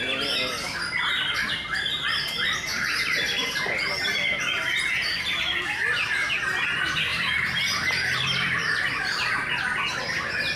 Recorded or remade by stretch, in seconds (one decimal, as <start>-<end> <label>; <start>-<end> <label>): 0.0-2.7 recorded; 2.7-3.6 remade; 3.6-7.1 recorded; 7.1-9.3 remade; 9.3-10.6 recorded